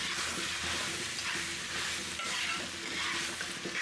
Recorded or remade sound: recorded